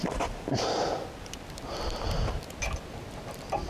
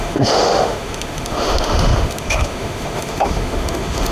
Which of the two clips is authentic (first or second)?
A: first